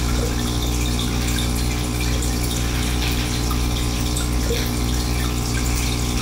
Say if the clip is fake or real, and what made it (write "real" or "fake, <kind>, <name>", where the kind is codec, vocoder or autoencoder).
real